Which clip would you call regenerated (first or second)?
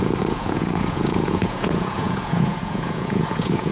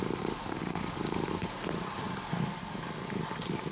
first